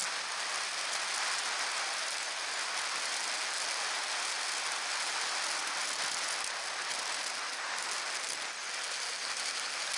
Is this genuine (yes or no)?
yes